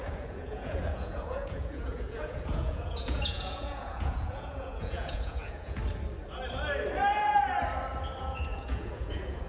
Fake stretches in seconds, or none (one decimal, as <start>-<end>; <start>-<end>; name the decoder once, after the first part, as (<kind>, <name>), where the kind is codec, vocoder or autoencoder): 0.0-5.8 (vocoder, Vocos); 8.2-9.5